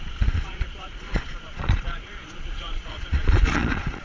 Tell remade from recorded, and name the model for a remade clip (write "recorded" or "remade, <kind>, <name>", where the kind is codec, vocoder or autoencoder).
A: remade, vocoder, Vocos